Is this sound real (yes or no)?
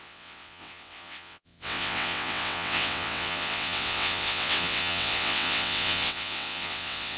no